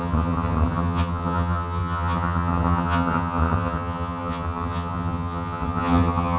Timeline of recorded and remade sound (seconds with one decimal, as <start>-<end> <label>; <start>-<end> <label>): 0.0-6.4 remade